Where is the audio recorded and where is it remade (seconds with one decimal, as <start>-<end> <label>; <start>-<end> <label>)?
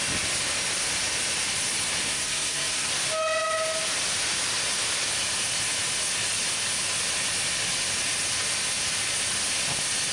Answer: 0.0-2.1 recorded; 2.1-2.9 remade; 2.9-10.1 recorded